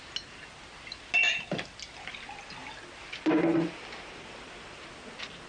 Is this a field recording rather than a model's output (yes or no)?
yes